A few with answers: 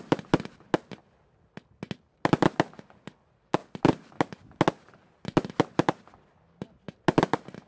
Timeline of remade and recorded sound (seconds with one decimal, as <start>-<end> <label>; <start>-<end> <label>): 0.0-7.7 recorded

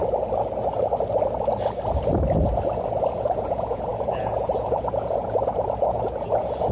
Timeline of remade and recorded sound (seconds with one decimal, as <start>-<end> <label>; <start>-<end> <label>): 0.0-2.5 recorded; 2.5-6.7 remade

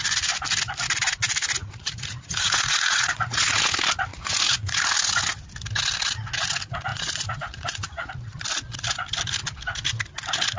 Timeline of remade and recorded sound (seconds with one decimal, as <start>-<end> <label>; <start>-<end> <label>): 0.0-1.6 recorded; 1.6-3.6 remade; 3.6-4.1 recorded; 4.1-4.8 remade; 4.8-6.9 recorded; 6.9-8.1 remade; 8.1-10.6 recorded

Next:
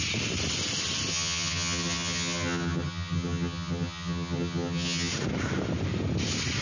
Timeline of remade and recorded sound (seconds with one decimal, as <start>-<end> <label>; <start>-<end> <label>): 0.0-1.1 recorded; 1.1-5.1 remade; 5.1-6.6 recorded

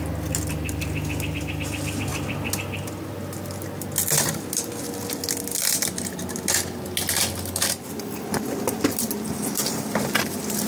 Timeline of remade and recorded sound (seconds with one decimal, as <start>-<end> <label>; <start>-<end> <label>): 0.0-10.7 recorded

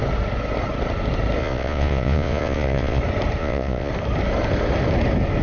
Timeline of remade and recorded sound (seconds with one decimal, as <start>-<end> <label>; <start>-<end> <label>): 0.0-1.4 recorded; 1.4-3.0 remade; 3.0-3.4 recorded; 3.4-3.9 remade; 3.9-5.4 recorded

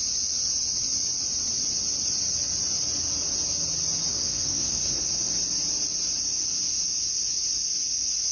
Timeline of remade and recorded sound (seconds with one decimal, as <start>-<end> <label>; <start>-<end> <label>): 0.0-4.1 recorded; 4.1-5.3 remade; 5.3-8.3 recorded

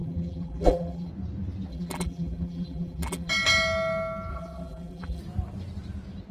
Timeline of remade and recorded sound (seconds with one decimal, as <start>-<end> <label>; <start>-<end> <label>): 0.0-1.1 remade; 1.1-1.7 recorded; 1.7-3.3 remade; 3.3-4.3 recorded; 4.3-5.2 remade; 5.2-6.3 recorded